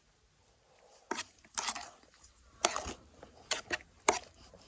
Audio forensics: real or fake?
real